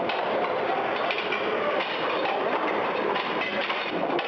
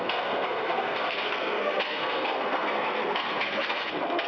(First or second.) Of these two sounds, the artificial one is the second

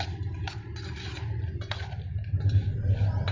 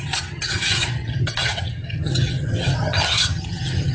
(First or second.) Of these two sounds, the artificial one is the second